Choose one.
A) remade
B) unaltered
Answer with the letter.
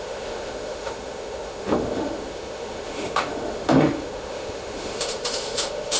A